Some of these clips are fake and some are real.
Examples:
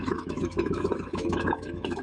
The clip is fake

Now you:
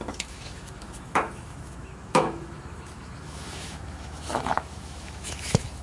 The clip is fake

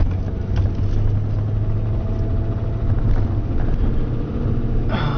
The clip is real